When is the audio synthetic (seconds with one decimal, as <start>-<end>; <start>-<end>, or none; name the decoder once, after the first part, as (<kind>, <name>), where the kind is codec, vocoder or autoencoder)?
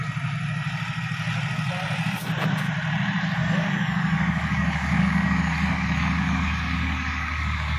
3.4-7.8 (codec, DAC)